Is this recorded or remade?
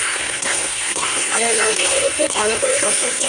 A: remade